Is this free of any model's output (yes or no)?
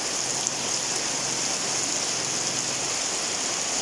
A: yes